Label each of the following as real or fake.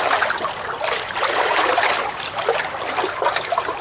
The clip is real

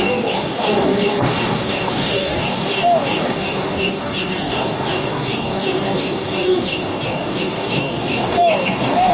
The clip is fake